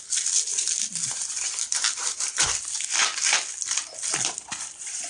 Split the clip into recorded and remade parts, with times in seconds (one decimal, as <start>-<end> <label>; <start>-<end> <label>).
0.0-5.1 recorded